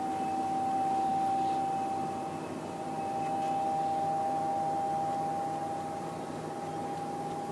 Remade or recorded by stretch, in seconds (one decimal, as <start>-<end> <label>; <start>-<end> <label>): 0.0-7.5 recorded